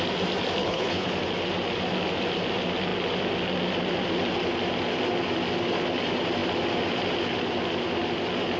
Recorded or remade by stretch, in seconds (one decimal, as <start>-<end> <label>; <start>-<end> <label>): 0.0-0.6 recorded; 0.6-1.1 remade; 1.1-8.6 recorded